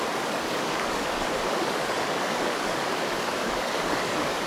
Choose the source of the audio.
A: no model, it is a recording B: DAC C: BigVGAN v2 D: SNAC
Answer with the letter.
B